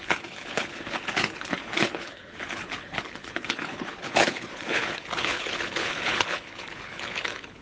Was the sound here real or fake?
fake